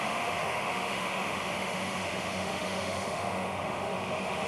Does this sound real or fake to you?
fake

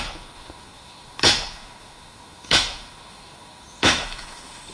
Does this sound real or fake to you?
fake